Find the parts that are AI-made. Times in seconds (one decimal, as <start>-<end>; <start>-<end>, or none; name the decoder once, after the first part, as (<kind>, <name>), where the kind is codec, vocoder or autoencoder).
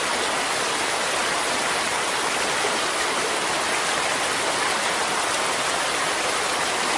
none